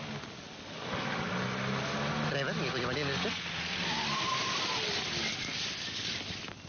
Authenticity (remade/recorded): recorded